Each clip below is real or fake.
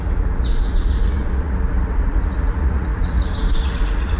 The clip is fake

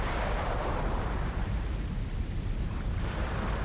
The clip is real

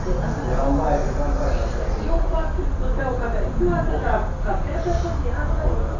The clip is real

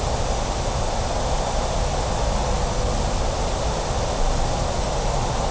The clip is real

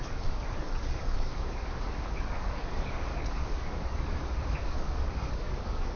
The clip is fake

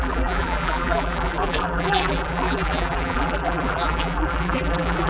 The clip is fake